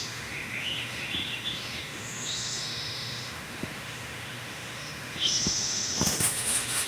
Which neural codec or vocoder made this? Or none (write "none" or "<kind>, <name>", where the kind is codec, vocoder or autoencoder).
autoencoder, DAC-VAE